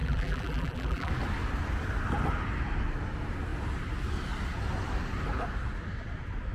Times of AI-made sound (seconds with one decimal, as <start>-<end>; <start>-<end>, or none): 0.0-1.1